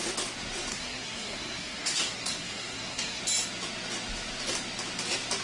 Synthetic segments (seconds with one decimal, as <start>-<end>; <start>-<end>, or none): 0.7-3.2